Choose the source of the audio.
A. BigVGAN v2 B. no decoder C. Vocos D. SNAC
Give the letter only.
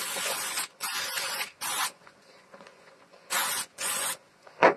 C